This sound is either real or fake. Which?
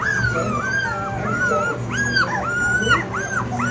real